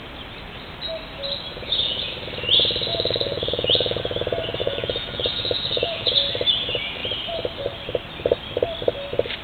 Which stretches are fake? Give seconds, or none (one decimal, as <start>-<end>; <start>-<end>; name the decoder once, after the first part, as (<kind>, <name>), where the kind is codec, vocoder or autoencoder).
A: 1.5-2.1 (vocoder, Vocos); 2.9-4.0; 4.6-6.1